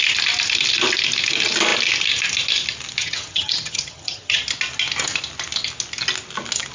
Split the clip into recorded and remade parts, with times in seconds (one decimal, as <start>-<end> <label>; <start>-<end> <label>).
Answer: 0.0-3.0 recorded; 3.0-4.4 remade; 4.4-6.7 recorded